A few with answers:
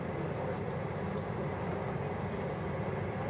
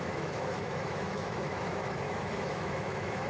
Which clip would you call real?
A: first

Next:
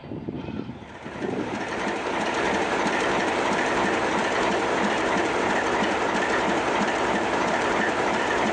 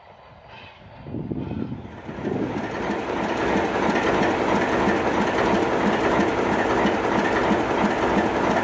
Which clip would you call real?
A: second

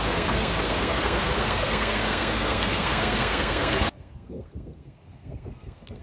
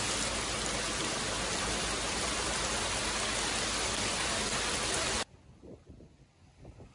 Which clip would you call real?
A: second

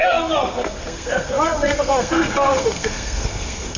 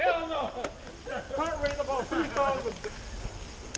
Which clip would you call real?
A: second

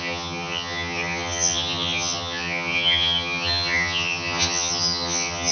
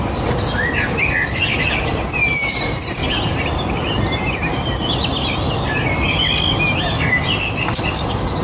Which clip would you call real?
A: second